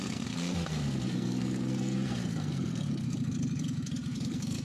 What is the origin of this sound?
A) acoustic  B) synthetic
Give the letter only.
B